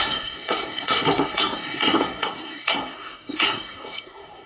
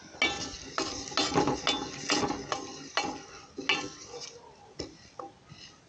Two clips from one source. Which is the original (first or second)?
second